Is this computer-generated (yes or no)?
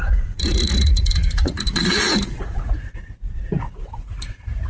yes